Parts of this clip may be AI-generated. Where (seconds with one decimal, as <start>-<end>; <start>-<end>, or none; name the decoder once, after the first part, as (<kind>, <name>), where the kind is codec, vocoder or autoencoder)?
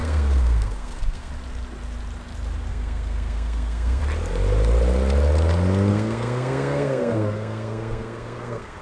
0.0-1.3 (codec, SNAC); 2.7-4.0; 5.9-8.8